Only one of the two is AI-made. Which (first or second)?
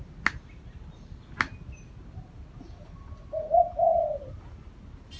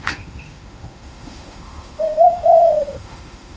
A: second